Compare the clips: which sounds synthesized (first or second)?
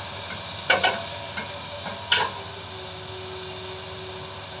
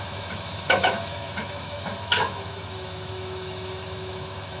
second